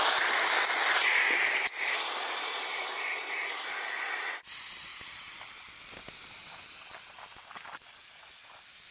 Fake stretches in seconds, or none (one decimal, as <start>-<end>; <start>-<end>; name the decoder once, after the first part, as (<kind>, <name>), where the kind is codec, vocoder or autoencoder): none